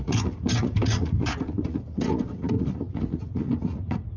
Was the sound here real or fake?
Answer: fake